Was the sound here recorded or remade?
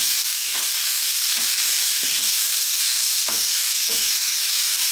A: remade